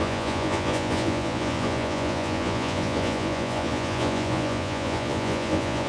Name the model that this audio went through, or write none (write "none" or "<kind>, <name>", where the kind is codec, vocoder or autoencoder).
vocoder, Vocos